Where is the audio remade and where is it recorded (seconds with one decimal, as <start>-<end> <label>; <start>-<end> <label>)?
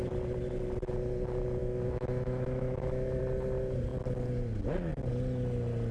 0.0-1.6 recorded; 1.6-3.2 remade; 3.2-5.9 recorded